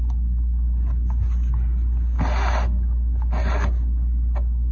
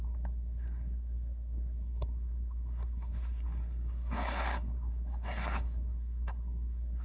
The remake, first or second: second